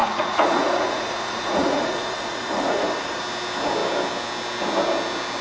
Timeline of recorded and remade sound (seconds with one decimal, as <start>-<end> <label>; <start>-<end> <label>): 0.0-3.2 remade; 3.2-5.4 recorded

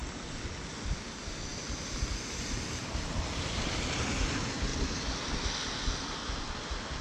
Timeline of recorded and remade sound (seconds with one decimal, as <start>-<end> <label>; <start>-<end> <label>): 0.0-7.0 recorded

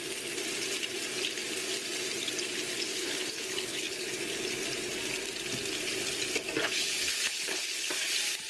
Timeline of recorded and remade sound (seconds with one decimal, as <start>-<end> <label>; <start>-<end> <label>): 0.0-2.9 recorded; 2.9-4.1 remade; 4.1-6.6 recorded; 6.6-7.9 remade; 7.9-8.5 recorded

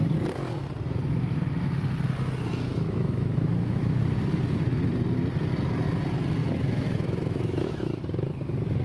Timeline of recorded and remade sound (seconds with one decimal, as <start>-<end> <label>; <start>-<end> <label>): 0.0-2.7 recorded; 2.7-4.0 remade; 4.0-6.4 recorded; 6.4-8.0 remade; 8.0-8.8 recorded